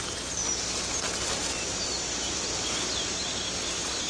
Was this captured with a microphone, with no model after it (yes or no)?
yes